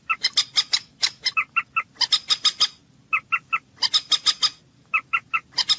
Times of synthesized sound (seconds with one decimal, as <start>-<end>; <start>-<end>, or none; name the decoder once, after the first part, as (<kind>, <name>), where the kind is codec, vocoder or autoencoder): none